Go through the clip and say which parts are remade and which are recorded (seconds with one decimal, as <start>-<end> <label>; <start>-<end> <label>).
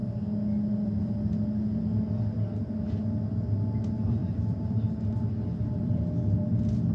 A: 0.0-4.2 recorded; 4.2-6.0 remade; 6.0-6.9 recorded